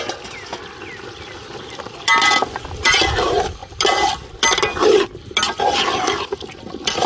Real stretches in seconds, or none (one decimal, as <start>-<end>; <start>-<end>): 0.0-7.1